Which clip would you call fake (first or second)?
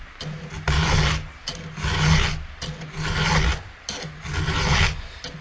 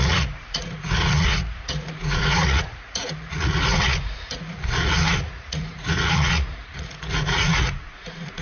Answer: second